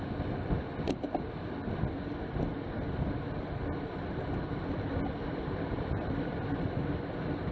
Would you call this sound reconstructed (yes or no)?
no